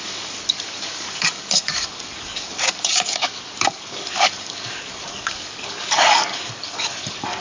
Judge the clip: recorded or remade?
remade